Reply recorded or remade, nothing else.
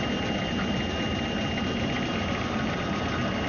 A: recorded